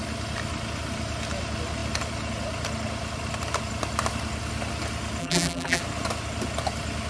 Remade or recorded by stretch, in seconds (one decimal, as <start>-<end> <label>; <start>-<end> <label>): 0.0-5.2 recorded; 5.2-5.8 remade; 5.8-7.1 recorded